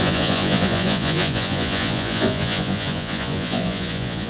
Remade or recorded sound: remade